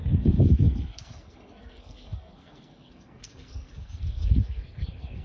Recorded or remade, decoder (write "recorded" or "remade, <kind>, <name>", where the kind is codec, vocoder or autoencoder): remade, codec, SNAC